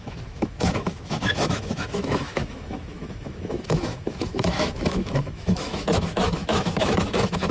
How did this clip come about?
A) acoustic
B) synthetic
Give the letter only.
B